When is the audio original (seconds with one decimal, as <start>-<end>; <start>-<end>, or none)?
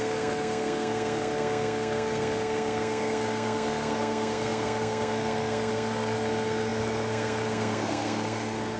none